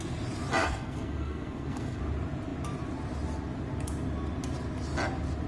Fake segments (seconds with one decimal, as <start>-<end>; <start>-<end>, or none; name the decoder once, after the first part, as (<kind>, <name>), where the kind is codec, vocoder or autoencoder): 0.6-2.0 (codec, SNAC)